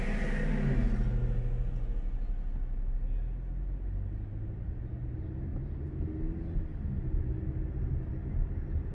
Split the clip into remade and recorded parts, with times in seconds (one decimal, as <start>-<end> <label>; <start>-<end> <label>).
0.0-5.5 recorded; 5.5-6.1 remade; 6.1-8.9 recorded